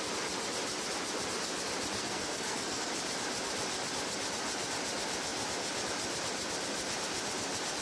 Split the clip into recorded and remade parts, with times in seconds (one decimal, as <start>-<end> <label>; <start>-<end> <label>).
0.0-2.0 recorded; 2.0-2.9 remade; 2.9-7.8 recorded